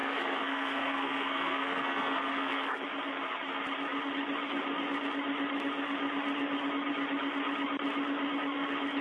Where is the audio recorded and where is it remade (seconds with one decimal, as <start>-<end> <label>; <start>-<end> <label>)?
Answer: 0.0-2.7 remade; 2.7-9.0 recorded